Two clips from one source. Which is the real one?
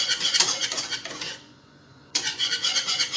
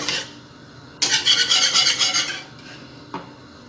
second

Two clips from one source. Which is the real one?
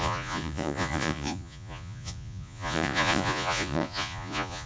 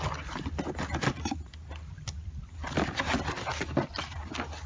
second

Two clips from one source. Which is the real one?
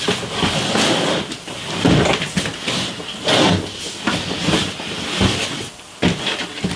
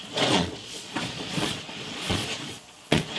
first